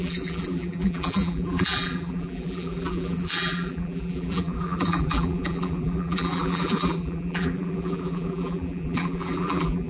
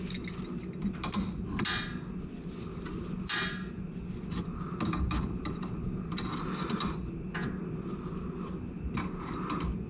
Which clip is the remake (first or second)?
first